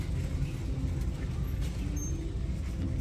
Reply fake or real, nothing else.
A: real